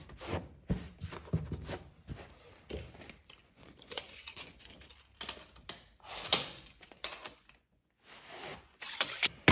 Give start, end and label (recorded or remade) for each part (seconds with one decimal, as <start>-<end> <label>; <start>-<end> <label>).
0.0-3.4 recorded; 3.4-4.7 remade; 4.7-6.3 recorded; 6.3-7.9 remade; 7.9-8.5 recorded; 8.5-9.1 remade; 9.1-9.5 recorded